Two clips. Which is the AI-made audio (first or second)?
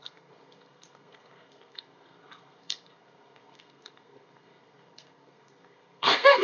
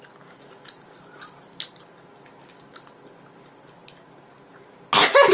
first